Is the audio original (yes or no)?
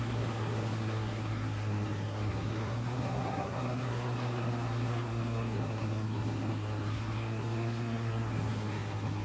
no